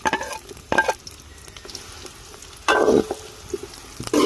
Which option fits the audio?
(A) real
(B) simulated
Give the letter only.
A